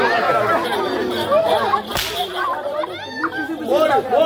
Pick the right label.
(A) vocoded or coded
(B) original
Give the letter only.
B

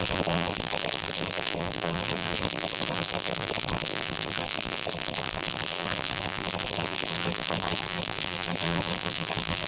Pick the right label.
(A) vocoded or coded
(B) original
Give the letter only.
A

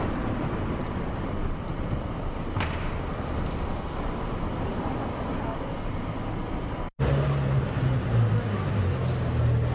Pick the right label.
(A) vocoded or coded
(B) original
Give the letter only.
B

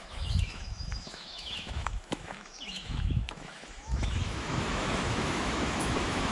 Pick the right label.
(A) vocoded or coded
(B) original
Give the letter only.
A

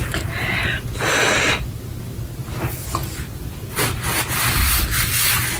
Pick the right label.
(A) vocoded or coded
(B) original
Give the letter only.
B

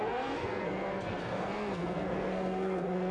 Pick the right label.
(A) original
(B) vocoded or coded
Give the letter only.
B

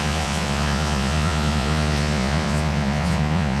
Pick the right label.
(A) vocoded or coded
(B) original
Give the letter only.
A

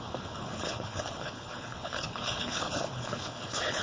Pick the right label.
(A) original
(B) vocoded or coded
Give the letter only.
B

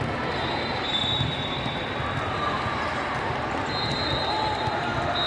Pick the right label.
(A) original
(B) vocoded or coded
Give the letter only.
A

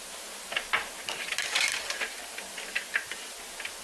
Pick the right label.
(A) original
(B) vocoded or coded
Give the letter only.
A